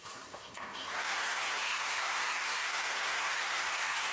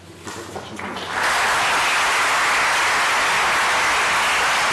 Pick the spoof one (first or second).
first